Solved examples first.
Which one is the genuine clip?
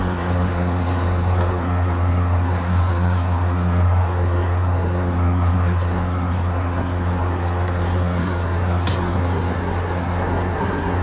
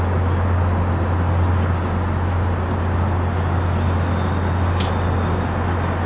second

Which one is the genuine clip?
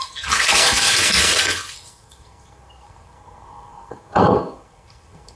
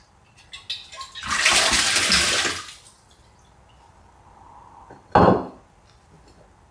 second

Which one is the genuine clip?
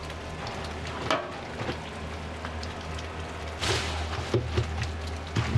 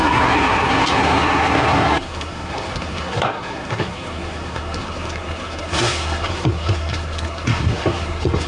first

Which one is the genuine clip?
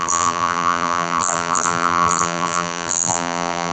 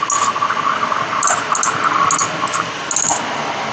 second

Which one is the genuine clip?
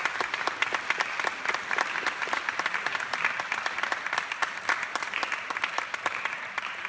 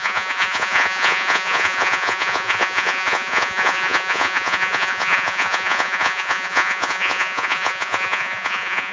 first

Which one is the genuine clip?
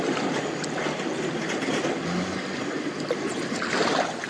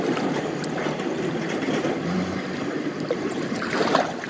first